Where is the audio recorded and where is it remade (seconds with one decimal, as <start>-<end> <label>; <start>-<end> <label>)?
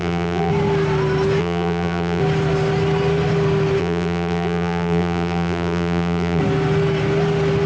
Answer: 0.0-0.5 remade; 0.5-1.4 recorded; 1.4-2.2 remade; 2.2-3.8 recorded; 3.8-6.4 remade; 6.4-7.7 recorded